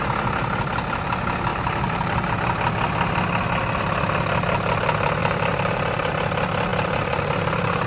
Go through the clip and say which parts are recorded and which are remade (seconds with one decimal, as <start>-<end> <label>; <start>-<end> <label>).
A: 0.0-1.5 recorded; 1.5-2.3 remade; 2.3-5.2 recorded; 5.2-6.1 remade; 6.1-6.7 recorded; 6.7-7.9 remade